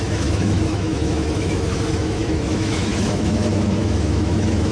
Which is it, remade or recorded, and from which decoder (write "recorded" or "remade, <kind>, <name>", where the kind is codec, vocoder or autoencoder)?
remade, autoencoder, DAC-VAE